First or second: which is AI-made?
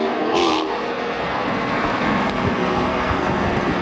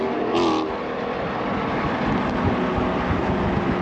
first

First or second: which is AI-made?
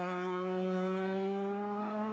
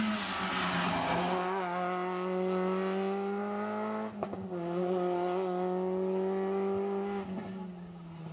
first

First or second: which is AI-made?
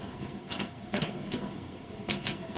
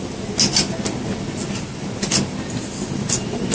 first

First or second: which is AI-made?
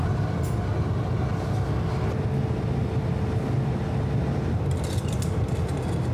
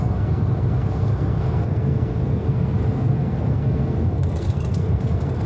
second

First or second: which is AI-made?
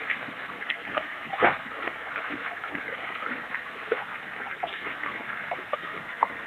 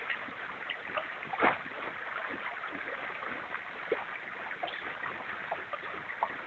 first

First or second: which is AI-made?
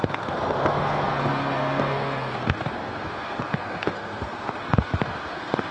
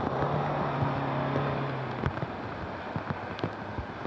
first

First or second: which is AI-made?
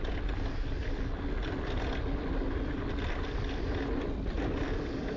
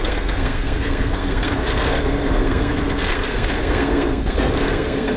second